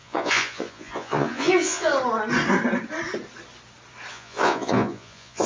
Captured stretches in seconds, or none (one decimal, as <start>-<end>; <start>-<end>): 1.9-4.1